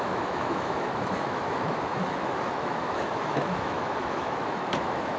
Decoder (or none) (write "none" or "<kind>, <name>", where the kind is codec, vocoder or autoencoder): autoencoder, DAC-VAE